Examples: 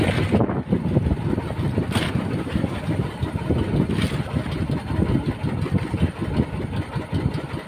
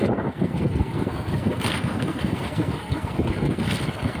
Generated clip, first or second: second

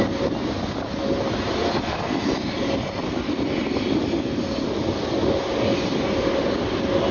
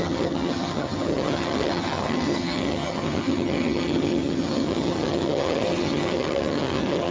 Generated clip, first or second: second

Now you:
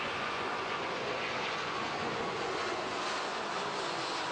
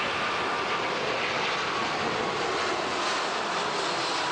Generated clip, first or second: first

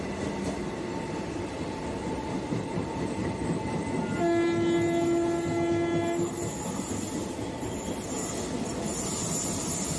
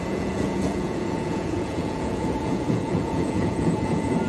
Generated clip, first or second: second